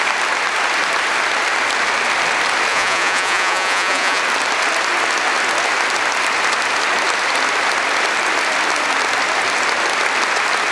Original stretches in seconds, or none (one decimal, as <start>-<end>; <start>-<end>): 0.0-2.7; 4.2-10.7